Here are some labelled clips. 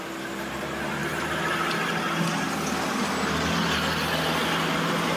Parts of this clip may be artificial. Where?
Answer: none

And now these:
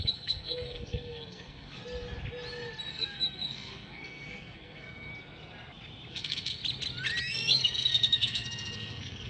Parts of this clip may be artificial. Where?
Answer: 0.0-1.8 (codec, SNAC); 2.9-5.1; 6.1-6.6; 7.2-9.3